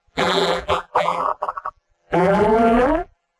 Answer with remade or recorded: remade